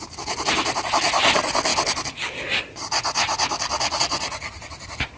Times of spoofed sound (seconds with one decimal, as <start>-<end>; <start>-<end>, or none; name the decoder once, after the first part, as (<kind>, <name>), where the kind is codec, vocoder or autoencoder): none